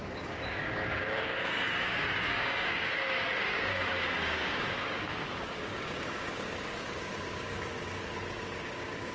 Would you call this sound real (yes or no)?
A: no